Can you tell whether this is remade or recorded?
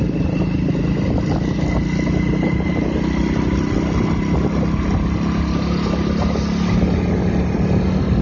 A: recorded